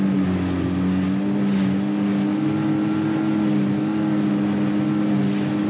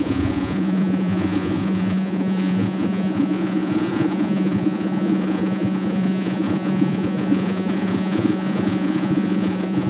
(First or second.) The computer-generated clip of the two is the second